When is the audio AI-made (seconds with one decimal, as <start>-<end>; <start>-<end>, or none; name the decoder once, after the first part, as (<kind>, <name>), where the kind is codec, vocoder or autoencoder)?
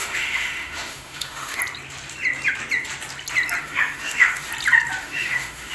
0.0-1.6 (autoencoder, DAC-VAE); 3.6-4.5; 5.0-5.7